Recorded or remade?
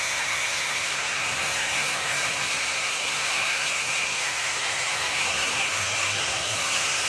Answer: remade